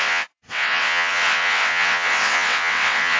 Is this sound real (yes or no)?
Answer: no